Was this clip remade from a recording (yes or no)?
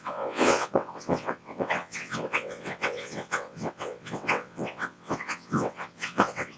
yes